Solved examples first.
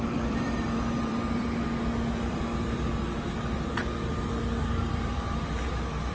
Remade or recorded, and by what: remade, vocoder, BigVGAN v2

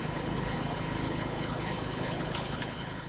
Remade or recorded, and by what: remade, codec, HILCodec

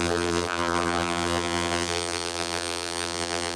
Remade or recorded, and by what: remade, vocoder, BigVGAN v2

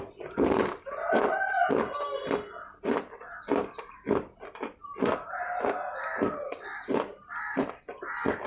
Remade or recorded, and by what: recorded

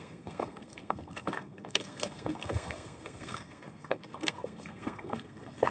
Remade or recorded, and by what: remade, codec, SNAC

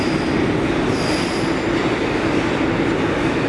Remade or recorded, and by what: recorded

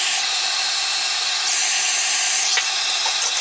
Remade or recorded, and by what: recorded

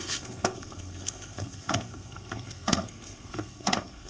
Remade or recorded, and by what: remade, codec, SNAC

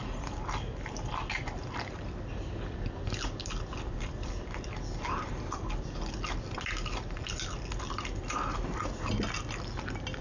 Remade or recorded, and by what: recorded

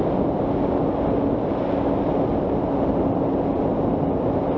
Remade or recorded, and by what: recorded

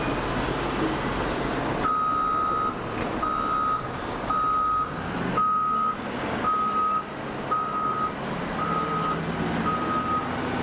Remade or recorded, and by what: recorded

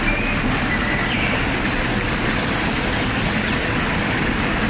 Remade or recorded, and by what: recorded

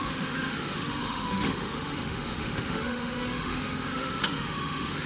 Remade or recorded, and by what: remade, autoencoder, DAC-VAE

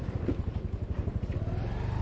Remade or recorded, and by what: recorded